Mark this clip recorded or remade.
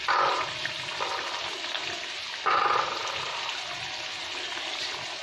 recorded